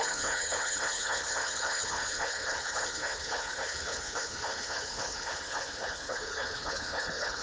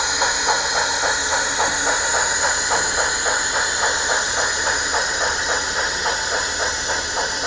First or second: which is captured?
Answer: second